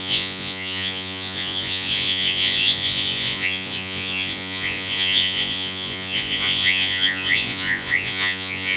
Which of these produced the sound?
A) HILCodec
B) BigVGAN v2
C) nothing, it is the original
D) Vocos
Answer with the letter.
D